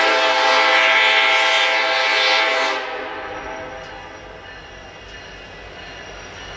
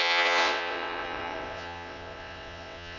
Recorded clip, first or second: first